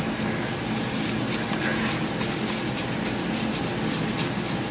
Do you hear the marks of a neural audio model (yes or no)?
no